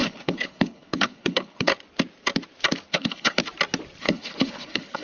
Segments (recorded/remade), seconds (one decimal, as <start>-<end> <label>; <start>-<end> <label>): 0.0-1.7 remade; 1.7-2.9 recorded; 2.9-3.4 remade; 3.4-4.0 recorded; 4.0-5.0 remade